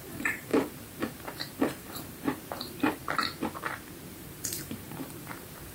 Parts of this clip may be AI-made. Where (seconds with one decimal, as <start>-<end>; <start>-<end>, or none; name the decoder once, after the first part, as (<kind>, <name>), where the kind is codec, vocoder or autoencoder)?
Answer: 0.0-3.0 (vocoder, BigVGAN v2); 4.1-5.7